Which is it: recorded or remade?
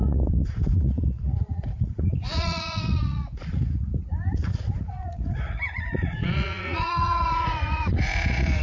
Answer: remade